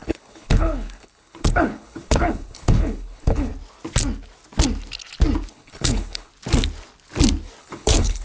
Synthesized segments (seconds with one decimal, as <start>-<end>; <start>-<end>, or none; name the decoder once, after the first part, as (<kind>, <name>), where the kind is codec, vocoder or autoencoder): 0.0-3.5 (codec, HILCodec); 5.5-6.3; 7.6-8.2

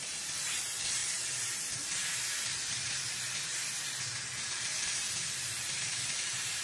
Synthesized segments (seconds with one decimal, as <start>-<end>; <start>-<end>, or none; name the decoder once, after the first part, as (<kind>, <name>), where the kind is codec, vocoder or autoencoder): 0.0-2.5 (vocoder, BigVGAN v2); 4.5-6.6

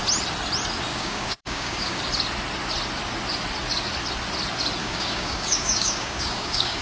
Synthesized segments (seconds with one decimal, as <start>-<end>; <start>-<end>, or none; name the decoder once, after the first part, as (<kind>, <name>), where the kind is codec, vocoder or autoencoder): 0.9-2.0 (codec, DAC); 4.8-6.8